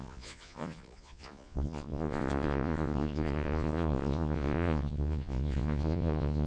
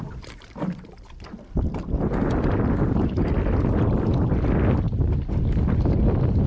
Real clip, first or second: second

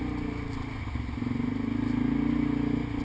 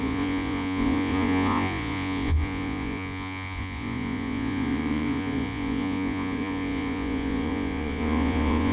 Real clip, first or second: first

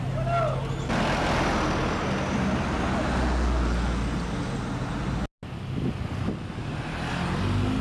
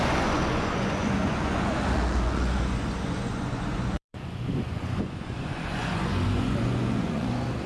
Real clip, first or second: first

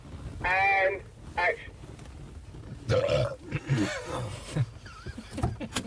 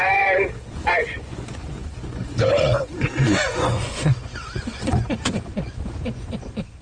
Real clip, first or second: first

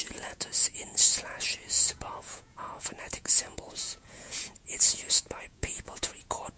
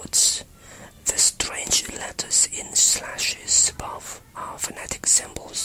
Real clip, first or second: second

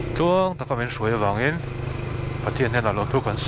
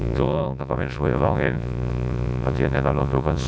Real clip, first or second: first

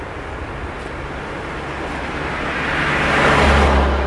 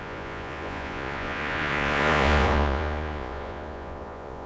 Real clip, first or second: first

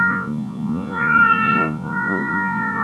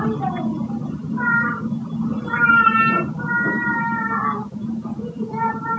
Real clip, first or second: second